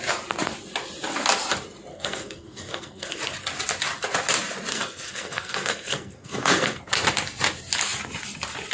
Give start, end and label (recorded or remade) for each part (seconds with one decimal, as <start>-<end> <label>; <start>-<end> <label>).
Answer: 0.0-1.9 recorded; 1.9-3.2 remade; 3.2-4.7 recorded; 4.7-6.8 remade; 6.8-8.7 recorded